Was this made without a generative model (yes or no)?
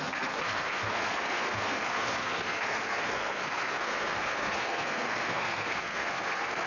no